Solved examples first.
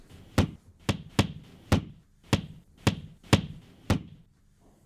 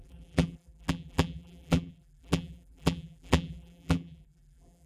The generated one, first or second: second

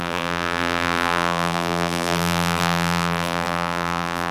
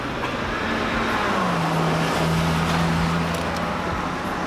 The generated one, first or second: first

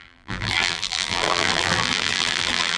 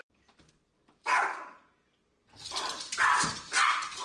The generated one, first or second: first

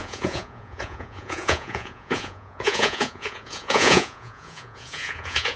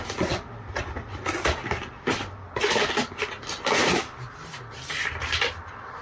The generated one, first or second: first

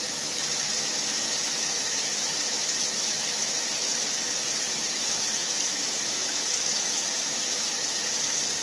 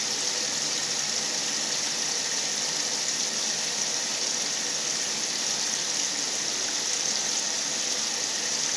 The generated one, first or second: first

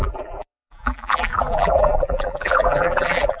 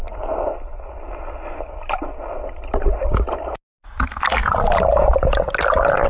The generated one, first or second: first